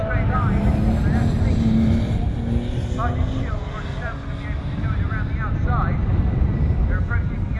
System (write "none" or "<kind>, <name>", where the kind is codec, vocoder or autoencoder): none